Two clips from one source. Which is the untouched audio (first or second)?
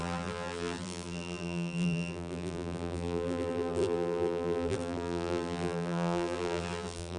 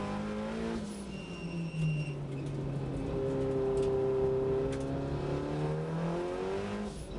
second